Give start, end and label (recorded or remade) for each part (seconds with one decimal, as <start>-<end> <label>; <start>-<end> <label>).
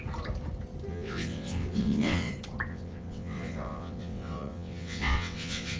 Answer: 0.0-0.9 recorded; 0.9-2.3 remade; 2.3-2.7 recorded; 2.7-5.8 remade